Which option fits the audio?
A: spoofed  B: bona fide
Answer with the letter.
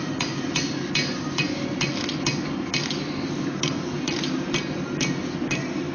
B